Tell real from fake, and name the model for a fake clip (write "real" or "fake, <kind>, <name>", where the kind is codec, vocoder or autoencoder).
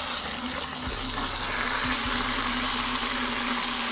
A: real